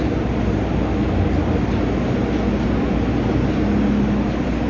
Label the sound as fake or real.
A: real